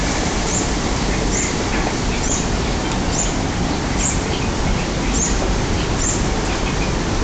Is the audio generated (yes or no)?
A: no